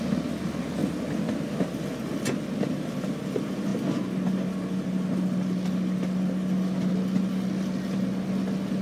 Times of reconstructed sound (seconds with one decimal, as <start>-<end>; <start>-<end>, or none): 0.8-2.1